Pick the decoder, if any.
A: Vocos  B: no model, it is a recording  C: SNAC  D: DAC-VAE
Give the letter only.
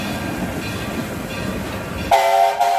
B